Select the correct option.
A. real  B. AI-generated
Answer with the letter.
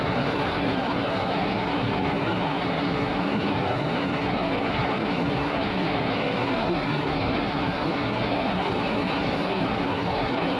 B